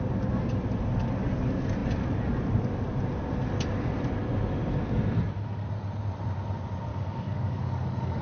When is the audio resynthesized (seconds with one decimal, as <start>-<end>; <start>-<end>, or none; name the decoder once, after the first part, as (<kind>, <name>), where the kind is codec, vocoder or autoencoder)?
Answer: 6.9-8.2 (codec, DAC)